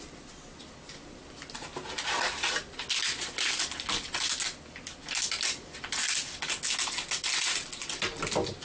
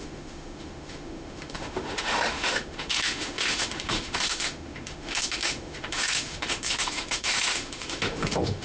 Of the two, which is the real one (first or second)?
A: first